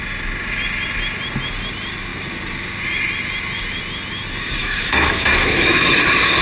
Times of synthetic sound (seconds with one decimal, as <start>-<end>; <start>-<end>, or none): 4.6-5.9